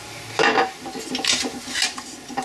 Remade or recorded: recorded